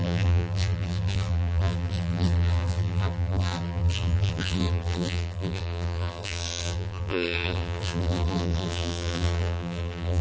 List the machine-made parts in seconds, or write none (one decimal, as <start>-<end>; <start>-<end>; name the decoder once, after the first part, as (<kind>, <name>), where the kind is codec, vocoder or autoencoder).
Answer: 0.0-10.2 (vocoder, BigVGAN v2)